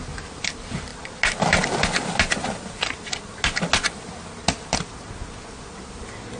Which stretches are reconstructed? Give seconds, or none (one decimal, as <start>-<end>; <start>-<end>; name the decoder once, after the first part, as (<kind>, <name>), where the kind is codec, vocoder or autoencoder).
none